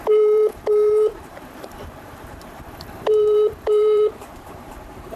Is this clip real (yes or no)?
no